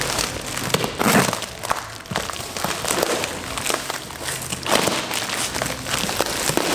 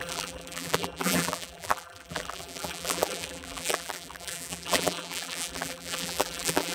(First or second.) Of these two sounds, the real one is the first